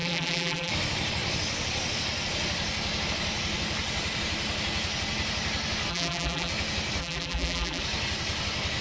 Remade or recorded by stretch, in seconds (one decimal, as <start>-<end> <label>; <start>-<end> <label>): 0.0-0.7 remade; 0.7-5.9 recorded; 5.9-6.5 remade; 6.5-7.0 recorded; 7.0-7.8 remade; 7.8-8.8 recorded